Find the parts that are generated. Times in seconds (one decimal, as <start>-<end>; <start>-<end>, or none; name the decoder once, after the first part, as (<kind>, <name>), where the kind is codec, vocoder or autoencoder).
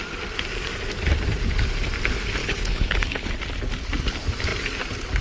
2.4-3.3 (codec, HILCodec)